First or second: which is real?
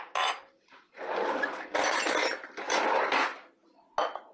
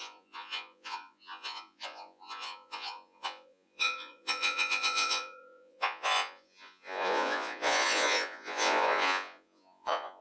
first